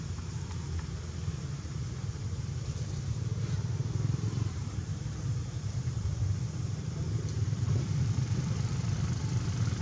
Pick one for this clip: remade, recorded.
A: remade